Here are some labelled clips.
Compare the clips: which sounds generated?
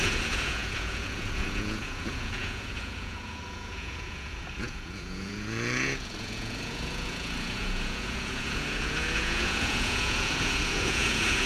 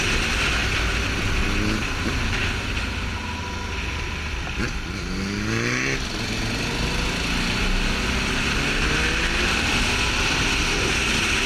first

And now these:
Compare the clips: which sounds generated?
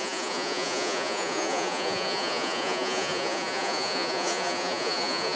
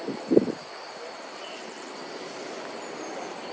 first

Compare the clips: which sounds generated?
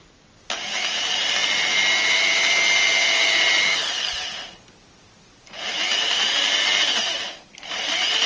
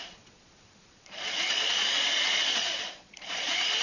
second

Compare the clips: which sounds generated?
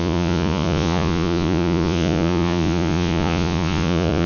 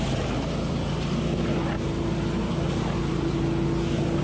first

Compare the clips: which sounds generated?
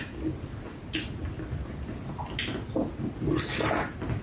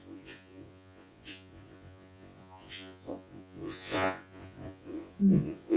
second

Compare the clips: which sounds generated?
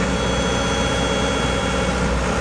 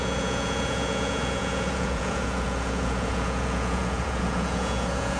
second